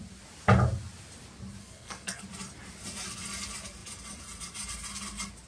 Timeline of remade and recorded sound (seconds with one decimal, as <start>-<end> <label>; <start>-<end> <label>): 0.0-1.6 recorded; 1.6-2.2 remade; 2.2-5.5 recorded